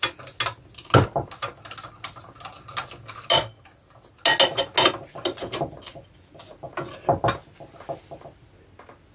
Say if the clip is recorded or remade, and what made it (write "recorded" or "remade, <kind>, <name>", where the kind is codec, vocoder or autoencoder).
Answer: recorded